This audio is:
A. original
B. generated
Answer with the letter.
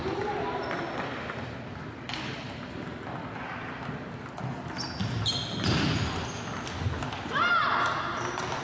A